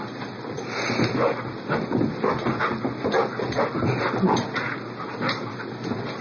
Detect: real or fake real